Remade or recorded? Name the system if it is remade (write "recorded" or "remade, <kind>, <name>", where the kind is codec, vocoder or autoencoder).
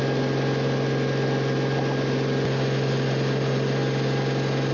recorded